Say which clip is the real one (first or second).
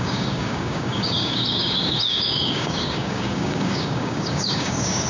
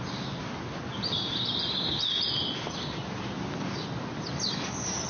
second